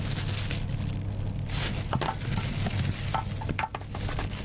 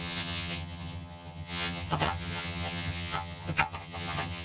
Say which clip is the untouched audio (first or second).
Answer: first